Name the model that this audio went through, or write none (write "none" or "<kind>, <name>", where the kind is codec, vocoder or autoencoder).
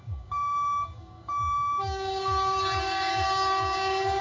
codec, DAC